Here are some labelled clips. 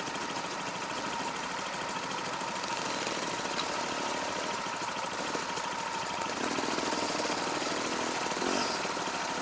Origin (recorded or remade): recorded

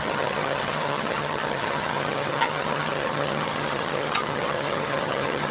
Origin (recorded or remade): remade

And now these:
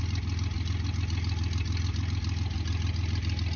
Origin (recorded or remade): recorded